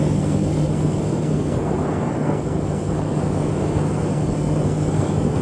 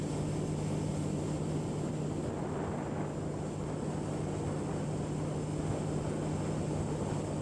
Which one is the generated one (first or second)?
first